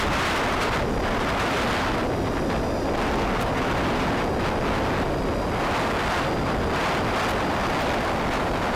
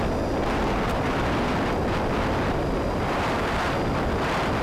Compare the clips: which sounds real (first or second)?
first